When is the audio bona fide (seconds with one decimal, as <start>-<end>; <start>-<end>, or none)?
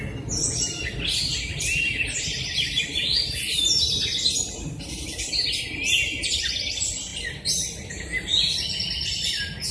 0.0-9.7